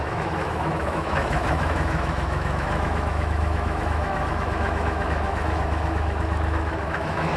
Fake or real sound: fake